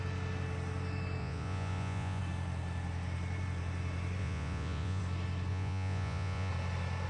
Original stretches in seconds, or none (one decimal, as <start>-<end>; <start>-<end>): 0.0-1.2; 2.2-4.2; 5.0-5.5; 6.5-7.1